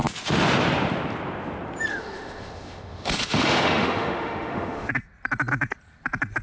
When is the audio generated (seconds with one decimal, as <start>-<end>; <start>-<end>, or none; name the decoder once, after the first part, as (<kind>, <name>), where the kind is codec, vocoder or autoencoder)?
1.9-4.9 (autoencoder, DAC-VAE)